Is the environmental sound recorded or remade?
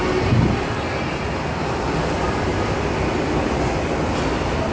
recorded